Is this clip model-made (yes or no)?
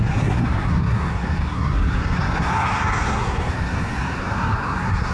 yes